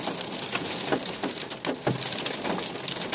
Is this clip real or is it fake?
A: real